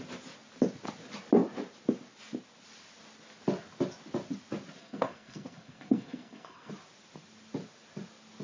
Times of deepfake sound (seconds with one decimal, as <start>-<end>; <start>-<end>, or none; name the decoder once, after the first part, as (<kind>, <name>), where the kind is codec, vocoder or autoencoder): 4.8-6.7 (codec, SNAC)